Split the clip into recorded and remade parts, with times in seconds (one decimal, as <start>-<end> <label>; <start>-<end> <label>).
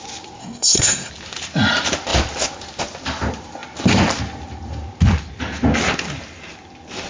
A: 0.0-0.4 recorded; 0.4-1.1 remade; 1.1-7.1 recorded